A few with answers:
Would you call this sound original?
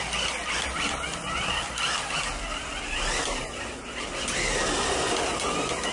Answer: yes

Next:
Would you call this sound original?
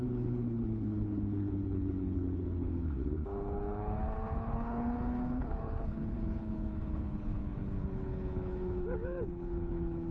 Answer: no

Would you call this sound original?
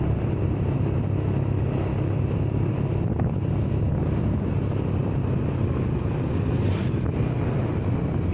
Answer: yes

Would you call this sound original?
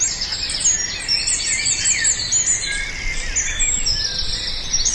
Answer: yes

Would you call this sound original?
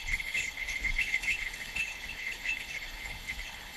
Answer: no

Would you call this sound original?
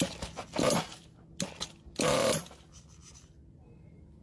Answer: yes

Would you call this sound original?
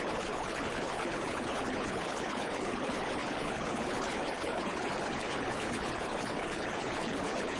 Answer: no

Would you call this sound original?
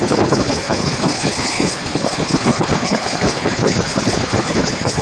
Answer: no